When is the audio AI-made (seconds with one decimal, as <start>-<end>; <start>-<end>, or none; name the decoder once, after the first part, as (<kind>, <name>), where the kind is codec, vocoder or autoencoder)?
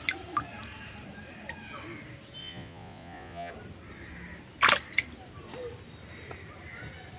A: 2.4-3.5 (vocoder, Vocos)